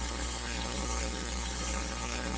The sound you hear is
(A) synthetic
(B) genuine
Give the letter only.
A